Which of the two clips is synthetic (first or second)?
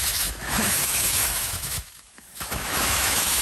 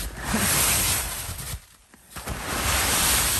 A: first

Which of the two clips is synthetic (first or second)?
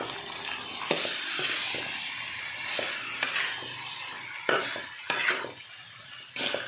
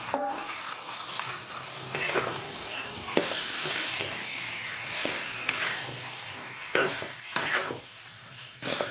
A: second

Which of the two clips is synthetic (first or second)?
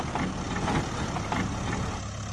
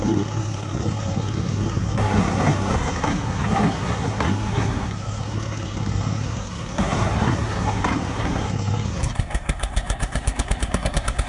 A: second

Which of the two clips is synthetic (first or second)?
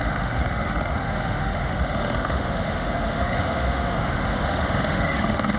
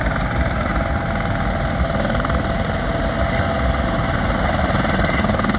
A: first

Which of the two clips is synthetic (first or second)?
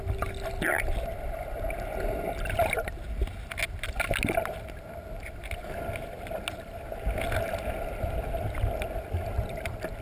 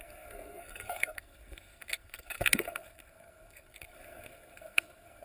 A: second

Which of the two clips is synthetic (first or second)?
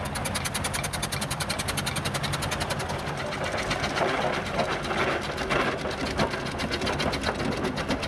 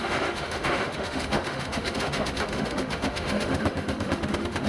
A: second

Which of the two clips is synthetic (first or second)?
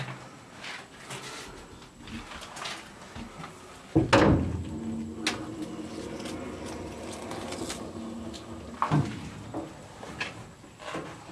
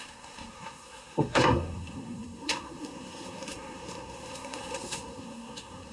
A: second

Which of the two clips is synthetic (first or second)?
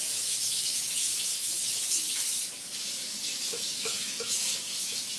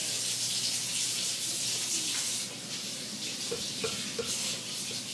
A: first